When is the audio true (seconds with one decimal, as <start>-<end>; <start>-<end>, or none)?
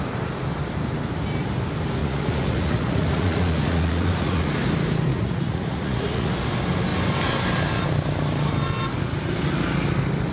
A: 0.0-2.0; 4.5-5.1; 6.3-10.3